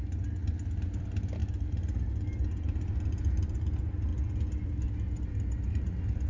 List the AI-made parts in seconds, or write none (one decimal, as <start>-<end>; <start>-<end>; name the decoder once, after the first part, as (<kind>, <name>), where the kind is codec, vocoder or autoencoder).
1.4-2.1 (vocoder, BigVGAN v2)